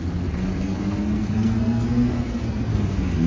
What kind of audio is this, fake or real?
fake